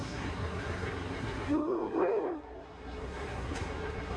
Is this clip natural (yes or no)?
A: no